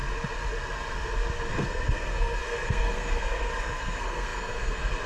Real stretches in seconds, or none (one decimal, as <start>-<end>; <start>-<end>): 0.0-1.5